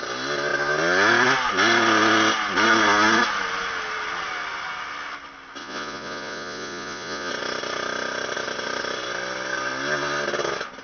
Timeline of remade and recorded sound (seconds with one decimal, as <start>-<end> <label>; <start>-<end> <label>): 0.0-5.6 recorded; 5.6-7.3 remade; 7.3-10.8 recorded